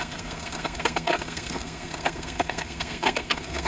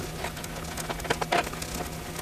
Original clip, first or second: second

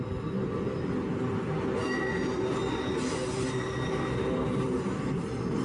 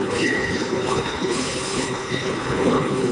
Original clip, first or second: first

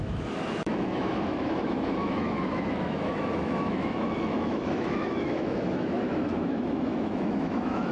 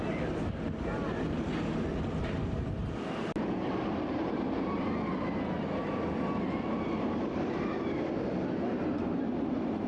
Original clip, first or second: second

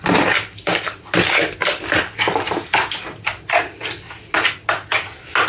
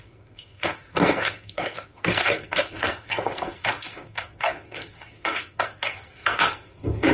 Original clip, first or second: first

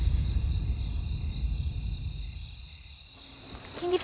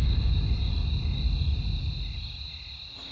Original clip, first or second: second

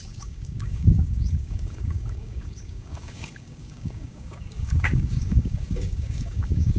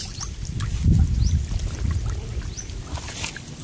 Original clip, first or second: second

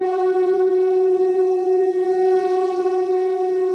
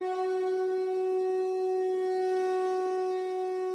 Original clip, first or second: second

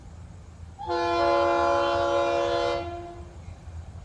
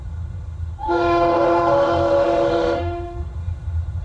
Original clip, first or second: first